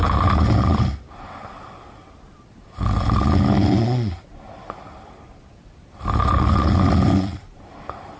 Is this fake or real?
real